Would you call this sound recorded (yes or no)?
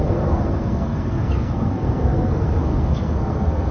no